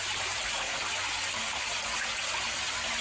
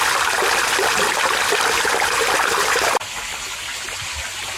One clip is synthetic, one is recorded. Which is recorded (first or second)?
first